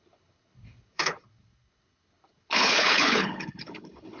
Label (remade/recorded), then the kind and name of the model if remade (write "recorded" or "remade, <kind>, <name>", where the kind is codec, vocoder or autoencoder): remade, codec, HILCodec